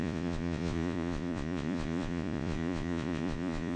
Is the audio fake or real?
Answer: fake